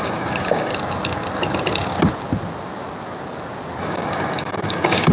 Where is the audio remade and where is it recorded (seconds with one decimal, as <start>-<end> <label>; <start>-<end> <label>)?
0.0-0.7 remade; 0.7-3.8 recorded; 3.8-5.1 remade